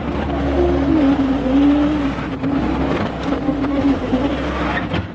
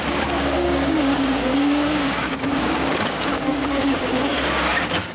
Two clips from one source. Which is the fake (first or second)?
second